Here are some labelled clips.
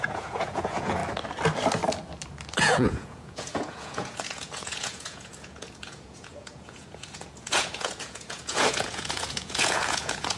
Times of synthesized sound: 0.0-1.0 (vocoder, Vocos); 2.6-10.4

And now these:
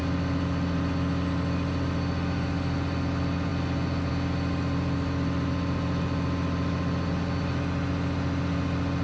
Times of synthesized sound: none

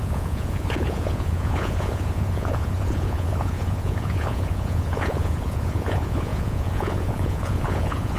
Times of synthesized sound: 0.0-8.2 (vocoder, Vocos)

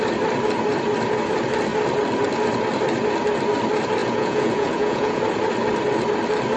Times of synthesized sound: 4.0-5.2 (vocoder, Vocos)

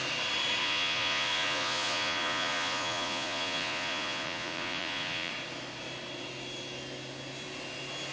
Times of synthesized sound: 0.6-5.3 (vocoder, Vocos)

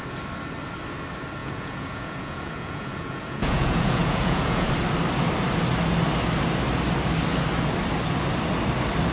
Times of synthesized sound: 1.4-4.7 (vocoder, Vocos)